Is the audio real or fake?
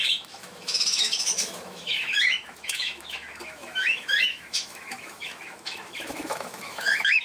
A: fake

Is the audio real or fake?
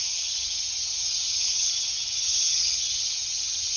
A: fake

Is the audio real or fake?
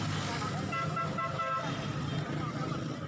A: real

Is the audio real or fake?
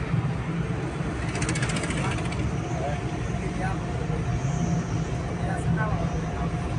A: real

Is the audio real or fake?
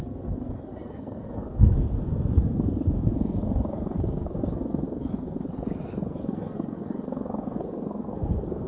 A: fake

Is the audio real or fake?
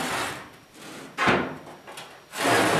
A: real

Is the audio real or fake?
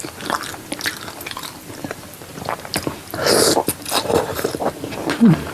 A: real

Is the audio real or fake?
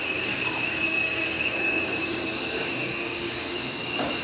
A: fake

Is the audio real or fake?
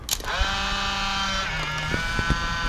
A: real